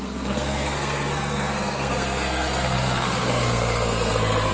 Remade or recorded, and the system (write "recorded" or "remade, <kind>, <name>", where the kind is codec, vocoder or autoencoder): remade, codec, SNAC